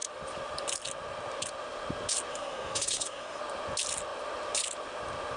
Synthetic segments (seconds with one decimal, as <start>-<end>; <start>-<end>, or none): 2.3-3.4